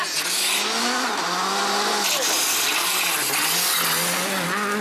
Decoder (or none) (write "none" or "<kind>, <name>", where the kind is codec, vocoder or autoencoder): none